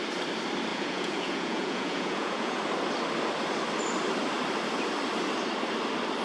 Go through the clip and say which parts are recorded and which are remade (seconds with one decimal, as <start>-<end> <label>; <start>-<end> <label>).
0.0-0.7 recorded; 0.7-2.6 remade; 2.6-6.2 recorded